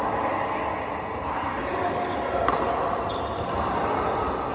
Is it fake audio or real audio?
real